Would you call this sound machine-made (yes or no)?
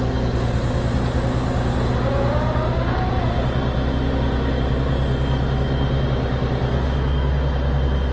no